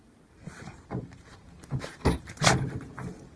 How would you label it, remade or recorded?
recorded